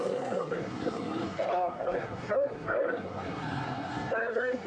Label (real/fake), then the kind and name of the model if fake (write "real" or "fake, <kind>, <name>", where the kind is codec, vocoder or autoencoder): fake, codec, SNAC